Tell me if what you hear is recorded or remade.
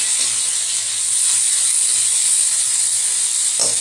recorded